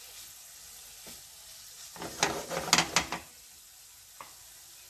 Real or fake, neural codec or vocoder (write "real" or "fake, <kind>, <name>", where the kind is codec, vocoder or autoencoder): real